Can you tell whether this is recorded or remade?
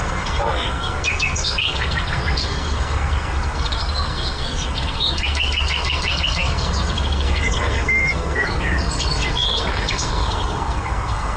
remade